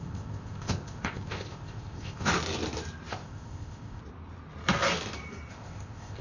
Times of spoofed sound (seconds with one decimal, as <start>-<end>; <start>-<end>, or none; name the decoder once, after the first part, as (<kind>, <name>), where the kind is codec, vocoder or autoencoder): 0.0-2.3 (codec, ZipCodec); 3.1-4.0; 5.5-6.2